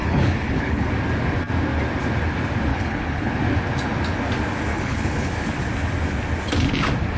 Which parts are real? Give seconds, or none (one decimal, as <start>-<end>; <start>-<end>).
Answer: 0.9-2.7; 3.4-4.7; 5.3-7.2